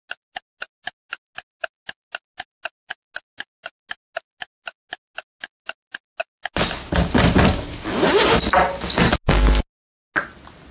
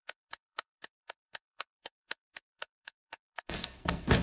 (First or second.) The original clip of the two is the first